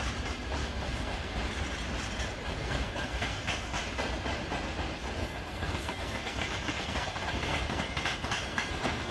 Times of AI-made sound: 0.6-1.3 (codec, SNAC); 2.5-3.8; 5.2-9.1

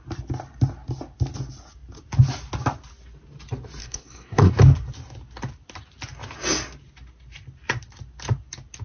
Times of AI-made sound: 3.8-4.5 (codec, SNAC)

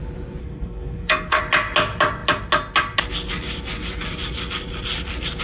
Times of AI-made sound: 0.4-1.4 (codec, SNAC)